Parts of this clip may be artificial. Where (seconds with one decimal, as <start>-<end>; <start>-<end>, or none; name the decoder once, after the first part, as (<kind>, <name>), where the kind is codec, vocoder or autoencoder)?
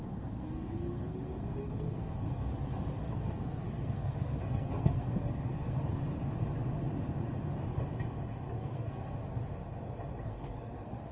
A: 0.0-2.5 (codec, SNAC); 3.0-6.0; 8.5-9.2; 10.2-11.1